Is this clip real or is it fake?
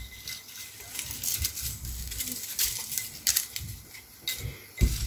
real